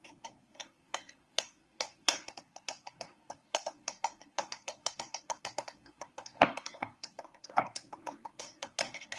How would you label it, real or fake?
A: fake